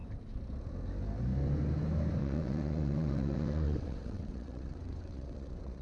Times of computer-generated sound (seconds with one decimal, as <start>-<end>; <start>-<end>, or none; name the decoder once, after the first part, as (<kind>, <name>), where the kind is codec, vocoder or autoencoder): 2.2-5.8 (vocoder, WaveNeXt)